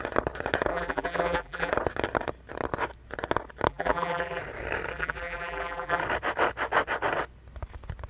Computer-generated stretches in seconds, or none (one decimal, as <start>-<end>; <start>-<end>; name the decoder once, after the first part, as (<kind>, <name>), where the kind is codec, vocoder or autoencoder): 0.7-1.7 (vocoder, BigVGAN v2); 3.7-4.4; 4.9-6.0